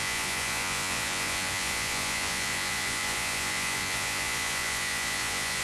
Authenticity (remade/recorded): remade